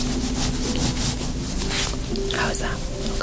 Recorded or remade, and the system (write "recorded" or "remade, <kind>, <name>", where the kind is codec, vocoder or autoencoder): recorded